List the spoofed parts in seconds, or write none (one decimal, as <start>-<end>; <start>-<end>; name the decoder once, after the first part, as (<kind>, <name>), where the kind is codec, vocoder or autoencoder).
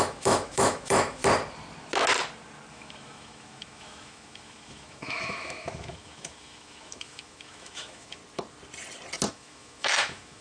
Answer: 0.0-1.2 (autoencoder, DAC-VAE); 2.7-8.2; 9.3-10.4